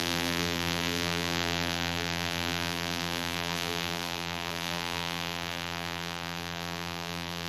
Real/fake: fake